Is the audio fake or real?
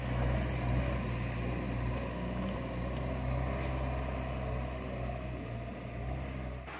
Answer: real